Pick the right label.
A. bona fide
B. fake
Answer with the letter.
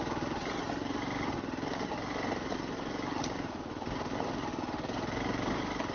A